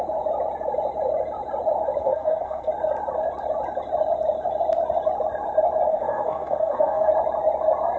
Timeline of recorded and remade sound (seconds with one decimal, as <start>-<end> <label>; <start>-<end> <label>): 0.0-2.0 recorded; 2.0-2.7 remade; 2.7-5.9 recorded; 5.9-7.1 remade; 7.1-8.0 recorded

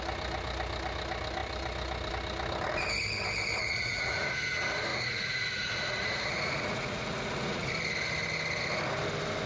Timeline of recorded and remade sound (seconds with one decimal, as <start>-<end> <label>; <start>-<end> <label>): 0.0-3.6 recorded; 3.6-4.2 remade; 4.2-4.9 recorded; 4.9-7.7 remade; 7.7-9.5 recorded

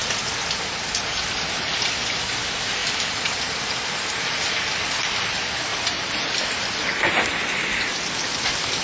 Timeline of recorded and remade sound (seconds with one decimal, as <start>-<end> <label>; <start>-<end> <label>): 0.0-2.8 recorded; 2.8-4.4 remade; 4.4-5.7 recorded; 5.7-6.3 remade; 6.3-8.8 recorded

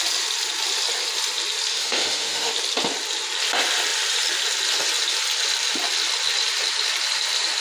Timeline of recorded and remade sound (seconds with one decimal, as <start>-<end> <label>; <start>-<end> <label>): 0.0-1.7 recorded; 1.7-2.5 remade; 2.5-7.6 recorded

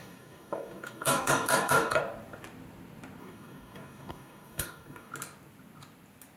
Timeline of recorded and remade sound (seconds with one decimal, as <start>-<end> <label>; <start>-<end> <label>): 0.0-2.0 remade; 2.0-3.2 recorded; 3.2-5.1 remade; 5.1-6.4 recorded

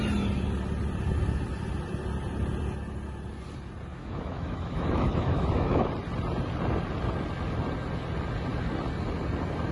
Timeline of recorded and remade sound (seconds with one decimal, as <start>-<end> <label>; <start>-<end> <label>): 0.0-3.9 recorded; 3.9-5.9 remade; 5.9-9.7 recorded